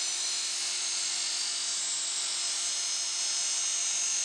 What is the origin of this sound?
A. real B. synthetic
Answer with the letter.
A